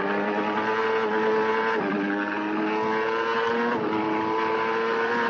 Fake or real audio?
real